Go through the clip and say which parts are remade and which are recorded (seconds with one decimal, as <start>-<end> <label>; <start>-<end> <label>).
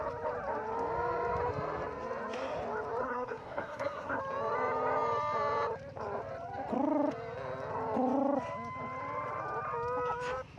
0.0-3.0 recorded; 3.0-4.2 remade; 4.2-10.6 recorded